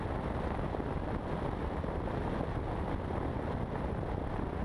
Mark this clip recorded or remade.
recorded